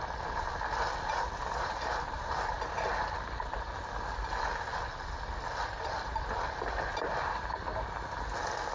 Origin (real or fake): real